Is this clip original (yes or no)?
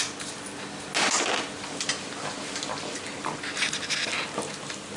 yes